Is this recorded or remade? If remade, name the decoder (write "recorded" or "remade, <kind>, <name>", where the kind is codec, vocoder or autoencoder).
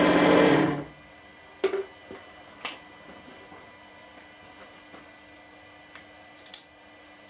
recorded